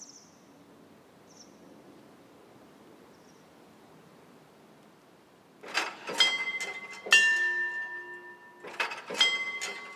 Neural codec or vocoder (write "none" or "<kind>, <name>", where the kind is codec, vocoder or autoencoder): none